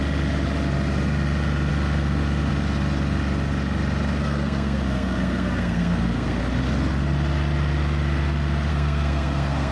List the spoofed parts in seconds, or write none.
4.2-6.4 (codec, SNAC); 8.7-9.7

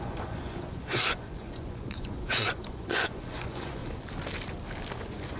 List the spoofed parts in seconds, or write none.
0.0-3.8 (vocoder, Vocos); 5.0-5.4

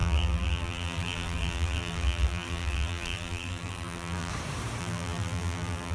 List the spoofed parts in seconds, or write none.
0.0-4.3 (vocoder, BigVGAN v2); 4.8-5.9

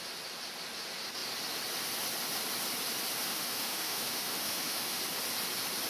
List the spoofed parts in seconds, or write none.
3.3-5.0 (autoencoder, DAC-VAE)

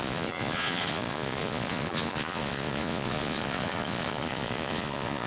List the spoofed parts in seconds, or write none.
0.0-5.3 (vocoder, Vocos)

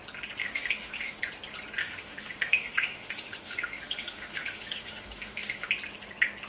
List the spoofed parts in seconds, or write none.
0.4-1.2 (autoencoder, DAC-VAE); 1.8-5.7

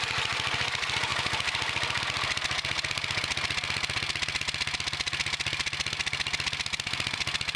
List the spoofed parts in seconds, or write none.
none

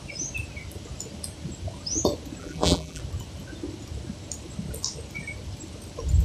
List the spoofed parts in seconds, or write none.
2.4-3.0 (vocoder, BigVGAN v2)